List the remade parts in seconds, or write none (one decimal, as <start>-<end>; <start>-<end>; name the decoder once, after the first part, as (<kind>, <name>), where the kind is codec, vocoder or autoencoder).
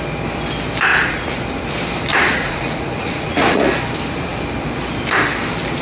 0.9-1.4 (vocoder, Vocos); 2.1-3.7